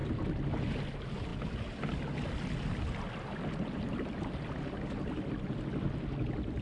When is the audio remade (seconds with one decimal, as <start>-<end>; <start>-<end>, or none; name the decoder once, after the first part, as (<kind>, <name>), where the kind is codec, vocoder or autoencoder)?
none